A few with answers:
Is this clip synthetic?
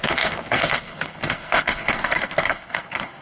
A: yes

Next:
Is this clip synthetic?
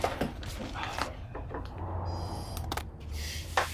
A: no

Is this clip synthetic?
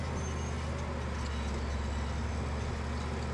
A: no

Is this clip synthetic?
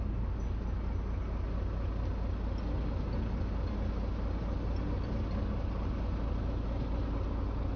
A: no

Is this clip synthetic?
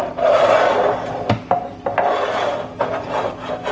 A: no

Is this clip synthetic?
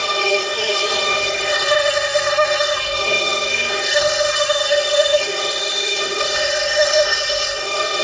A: yes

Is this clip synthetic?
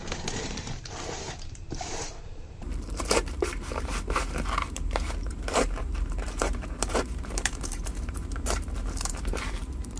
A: yes